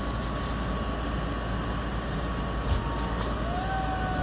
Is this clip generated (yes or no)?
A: no